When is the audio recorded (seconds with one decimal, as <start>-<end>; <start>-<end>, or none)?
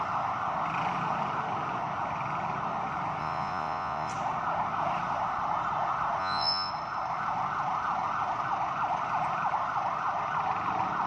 0.0-3.2; 4.1-6.2; 6.7-11.1